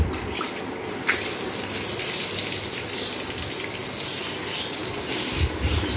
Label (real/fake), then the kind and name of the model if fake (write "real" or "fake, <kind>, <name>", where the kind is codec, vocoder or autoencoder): real